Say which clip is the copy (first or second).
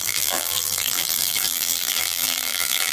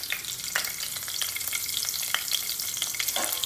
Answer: first